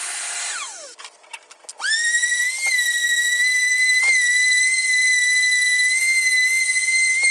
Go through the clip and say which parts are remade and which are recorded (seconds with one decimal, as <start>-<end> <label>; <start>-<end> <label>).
0.0-3.0 recorded; 3.0-4.0 remade; 4.0-6.0 recorded; 6.0-6.6 remade; 6.6-7.3 recorded